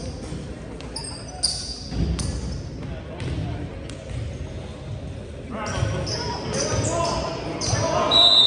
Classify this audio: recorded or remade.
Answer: recorded